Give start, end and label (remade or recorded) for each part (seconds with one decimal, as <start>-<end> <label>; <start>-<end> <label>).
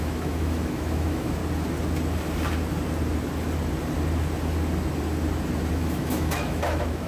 0.0-1.4 remade; 1.4-5.7 recorded; 5.7-7.1 remade